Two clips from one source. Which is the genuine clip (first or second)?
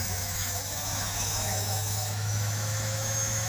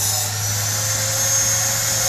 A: second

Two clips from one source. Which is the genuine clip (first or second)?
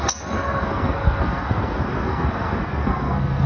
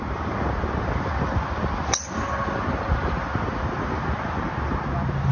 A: second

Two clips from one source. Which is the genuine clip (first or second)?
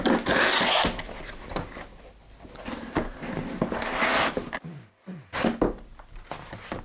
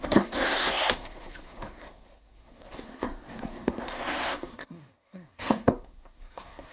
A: first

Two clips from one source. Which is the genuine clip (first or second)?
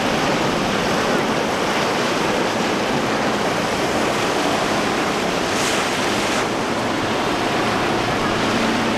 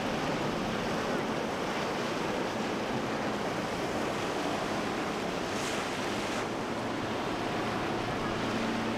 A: second